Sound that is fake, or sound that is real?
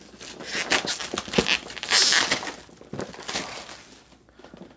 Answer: real